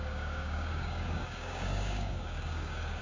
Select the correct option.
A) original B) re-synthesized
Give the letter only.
B